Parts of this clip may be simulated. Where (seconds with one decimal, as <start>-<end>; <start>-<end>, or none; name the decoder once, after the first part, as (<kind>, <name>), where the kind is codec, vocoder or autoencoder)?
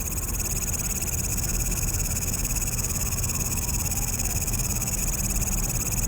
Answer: 1.3-5.0 (autoencoder, DAC-VAE)